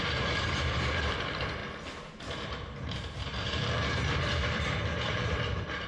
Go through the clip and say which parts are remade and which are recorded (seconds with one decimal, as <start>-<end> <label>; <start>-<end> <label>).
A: 0.0-1.6 remade; 1.6-2.2 recorded; 2.2-5.9 remade